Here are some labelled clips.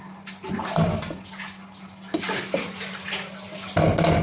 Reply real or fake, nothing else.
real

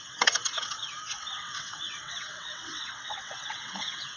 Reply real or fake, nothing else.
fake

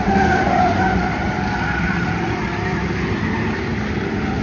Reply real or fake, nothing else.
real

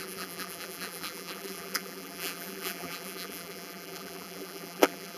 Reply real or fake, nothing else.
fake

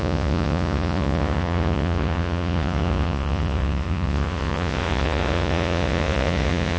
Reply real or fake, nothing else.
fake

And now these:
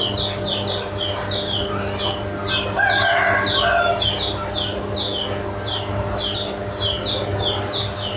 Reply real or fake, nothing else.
real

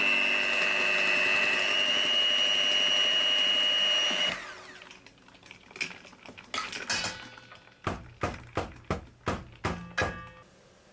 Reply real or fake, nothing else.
real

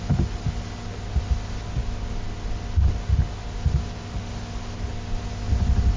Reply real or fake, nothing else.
real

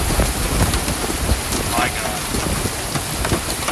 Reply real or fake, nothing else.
real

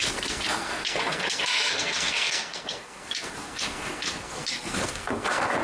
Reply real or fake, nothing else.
fake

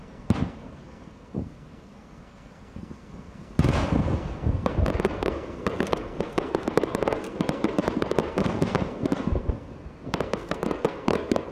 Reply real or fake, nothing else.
fake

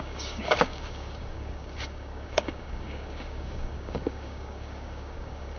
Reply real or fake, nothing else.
fake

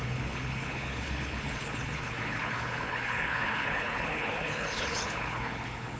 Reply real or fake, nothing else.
fake